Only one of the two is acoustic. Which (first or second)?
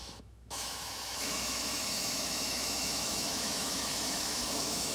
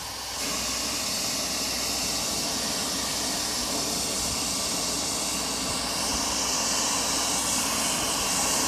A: second